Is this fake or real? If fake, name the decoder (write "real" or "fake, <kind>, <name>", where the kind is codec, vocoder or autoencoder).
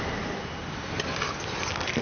real